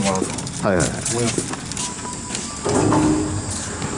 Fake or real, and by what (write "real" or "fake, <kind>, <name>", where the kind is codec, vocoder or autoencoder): real